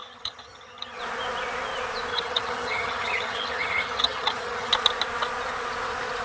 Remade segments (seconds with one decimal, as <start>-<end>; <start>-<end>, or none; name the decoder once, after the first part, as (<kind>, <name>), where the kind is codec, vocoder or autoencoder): 0.0-1.0 (vocoder, HiFi-GAN); 2.1-4.7